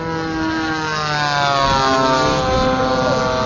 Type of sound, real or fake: real